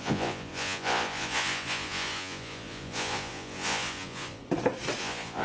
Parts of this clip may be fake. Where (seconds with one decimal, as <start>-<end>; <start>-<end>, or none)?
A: 0.0-4.4; 5.0-5.4